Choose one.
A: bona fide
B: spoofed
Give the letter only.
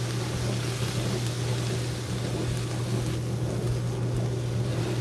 A